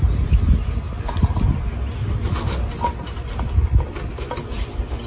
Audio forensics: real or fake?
real